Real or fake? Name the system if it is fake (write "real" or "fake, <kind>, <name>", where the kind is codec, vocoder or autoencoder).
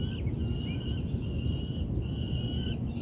real